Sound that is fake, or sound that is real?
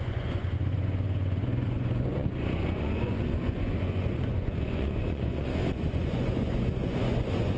fake